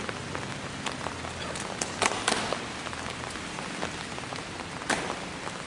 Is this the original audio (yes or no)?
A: yes